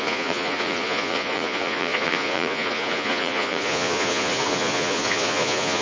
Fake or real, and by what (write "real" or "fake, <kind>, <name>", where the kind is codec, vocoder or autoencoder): fake, vocoder, Vocos